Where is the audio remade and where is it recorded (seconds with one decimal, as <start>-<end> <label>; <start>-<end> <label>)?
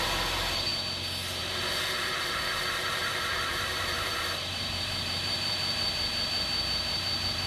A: 0.0-0.7 remade; 0.7-1.4 recorded; 1.4-7.5 remade